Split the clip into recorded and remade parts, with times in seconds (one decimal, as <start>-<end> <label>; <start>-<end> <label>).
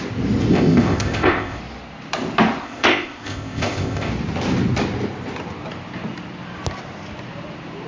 0.0-0.5 recorded; 0.5-1.6 remade; 1.6-2.6 recorded; 2.6-4.1 remade; 4.1-7.9 recorded